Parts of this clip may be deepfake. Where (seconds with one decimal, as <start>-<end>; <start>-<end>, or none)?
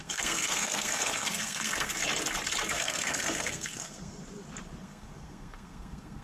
0.0-2.0; 2.7-4.2; 4.8-6.2